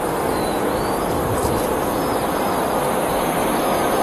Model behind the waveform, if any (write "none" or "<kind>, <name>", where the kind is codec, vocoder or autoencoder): none